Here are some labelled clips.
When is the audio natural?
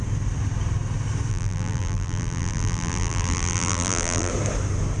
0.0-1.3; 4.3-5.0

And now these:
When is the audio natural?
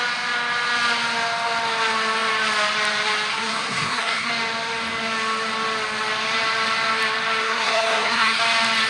0.0-3.3; 4.3-7.4; 8.4-8.9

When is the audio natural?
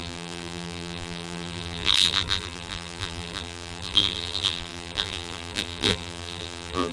none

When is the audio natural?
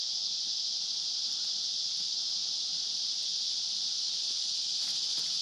0.0-5.4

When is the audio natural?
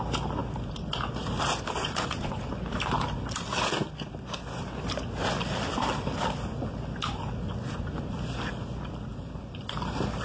0.0-1.8; 2.5-10.2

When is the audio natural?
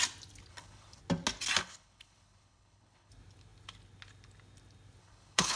0.0-0.5; 1.0-1.6; 3.1-5.0